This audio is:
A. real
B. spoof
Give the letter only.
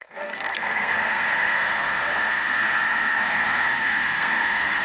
B